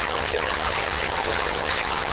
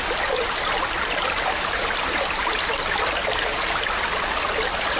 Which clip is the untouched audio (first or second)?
second